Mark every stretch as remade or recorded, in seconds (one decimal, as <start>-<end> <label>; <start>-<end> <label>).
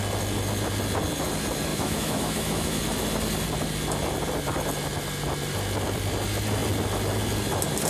0.0-1.7 recorded; 1.7-2.8 remade; 2.8-7.9 recorded